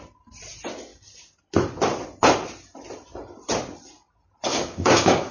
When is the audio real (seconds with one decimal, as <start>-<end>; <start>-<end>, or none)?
0.0-4.5